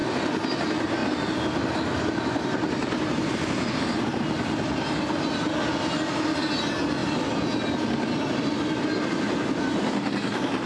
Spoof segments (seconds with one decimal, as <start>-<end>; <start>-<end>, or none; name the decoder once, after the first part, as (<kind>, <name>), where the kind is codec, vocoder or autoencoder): none